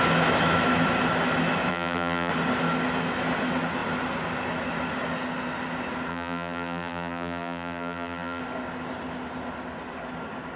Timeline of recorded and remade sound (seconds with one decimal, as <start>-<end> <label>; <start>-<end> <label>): 0.0-1.7 recorded; 1.7-2.3 remade; 2.3-6.1 recorded; 6.1-8.4 remade; 8.4-10.6 recorded